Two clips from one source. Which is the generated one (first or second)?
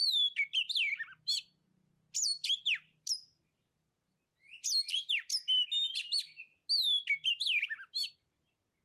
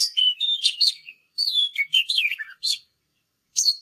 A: second